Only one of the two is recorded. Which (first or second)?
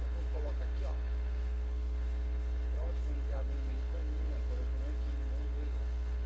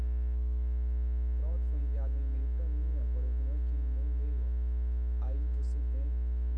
second